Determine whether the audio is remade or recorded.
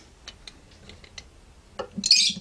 recorded